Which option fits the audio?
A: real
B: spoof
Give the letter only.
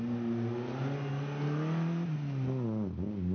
A